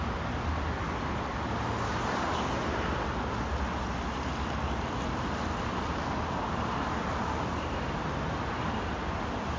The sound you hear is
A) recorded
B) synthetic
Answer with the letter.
A